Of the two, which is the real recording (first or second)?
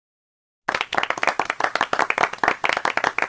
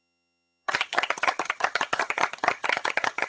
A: first